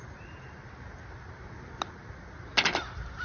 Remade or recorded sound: recorded